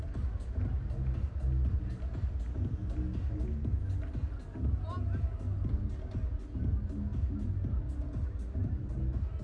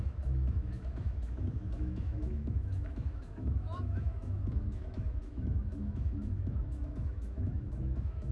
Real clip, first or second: first